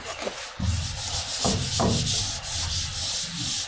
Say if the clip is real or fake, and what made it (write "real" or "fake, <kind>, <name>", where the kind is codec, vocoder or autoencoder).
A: real